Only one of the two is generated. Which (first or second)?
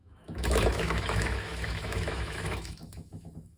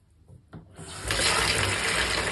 first